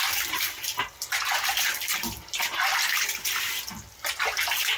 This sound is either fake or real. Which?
real